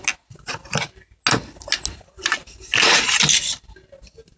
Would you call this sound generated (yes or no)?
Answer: no